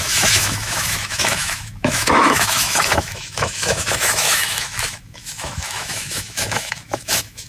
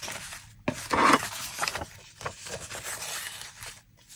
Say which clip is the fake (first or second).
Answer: first